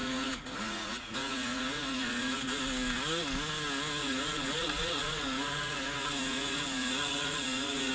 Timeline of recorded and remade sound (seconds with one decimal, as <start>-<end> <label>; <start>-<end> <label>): 0.0-2.6 remade; 2.6-4.0 recorded; 4.0-7.9 remade